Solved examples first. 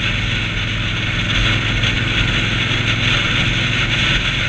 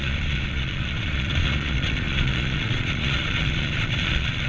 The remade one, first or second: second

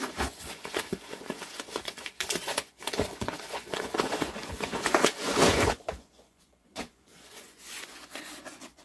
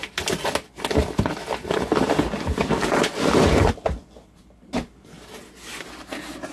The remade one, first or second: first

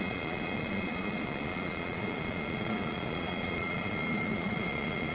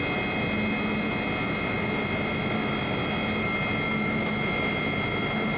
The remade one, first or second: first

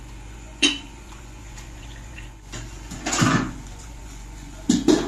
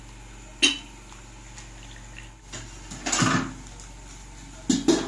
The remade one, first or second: first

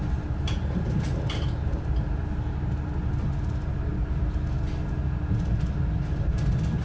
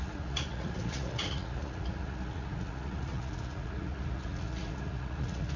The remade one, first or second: second